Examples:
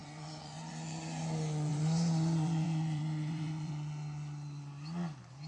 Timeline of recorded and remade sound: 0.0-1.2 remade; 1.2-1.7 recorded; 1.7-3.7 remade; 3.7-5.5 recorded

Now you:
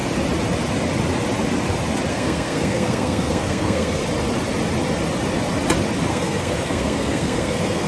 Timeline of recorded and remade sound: 0.0-2.1 recorded; 2.1-4.0 remade; 4.0-6.1 recorded; 6.1-7.9 remade

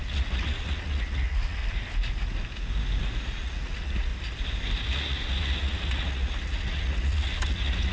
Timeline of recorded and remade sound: 0.0-1.6 remade; 1.6-3.2 recorded; 3.2-4.1 remade; 4.1-4.9 recorded; 4.9-7.9 remade

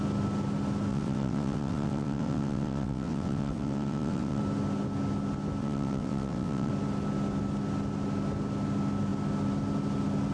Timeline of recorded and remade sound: 0.0-0.9 recorded; 0.9-4.4 remade; 4.4-5.6 recorded; 5.6-6.7 remade; 6.7-10.3 recorded

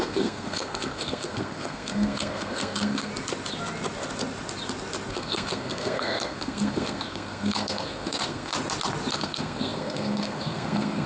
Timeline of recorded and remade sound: 0.0-3.1 remade; 3.1-5.1 recorded; 5.1-8.5 remade; 8.5-9.1 recorded; 9.1-11.1 remade

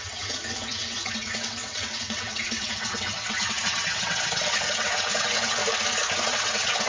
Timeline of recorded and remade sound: 0.0-5.6 remade; 5.6-6.2 recorded; 6.2-6.9 remade

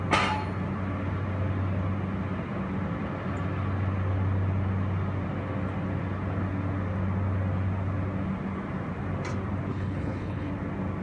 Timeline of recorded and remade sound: 0.0-9.7 recorded; 9.7-10.5 remade; 10.5-11.0 recorded

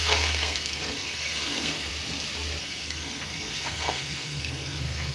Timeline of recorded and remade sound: 0.0-1.9 remade; 1.9-2.6 recorded; 2.6-5.1 remade